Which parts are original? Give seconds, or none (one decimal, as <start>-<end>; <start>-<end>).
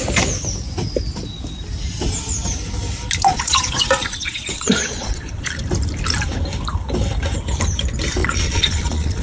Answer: 0.0-3.3; 5.5-8.2